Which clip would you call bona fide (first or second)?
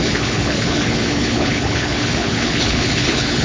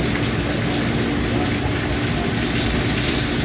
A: second